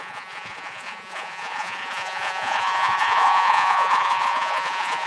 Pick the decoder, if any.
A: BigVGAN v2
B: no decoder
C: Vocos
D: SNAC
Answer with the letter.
C